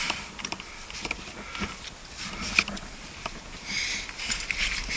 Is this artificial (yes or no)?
no